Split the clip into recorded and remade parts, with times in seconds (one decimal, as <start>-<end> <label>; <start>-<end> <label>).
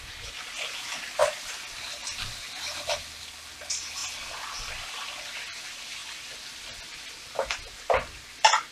0.0-8.7 recorded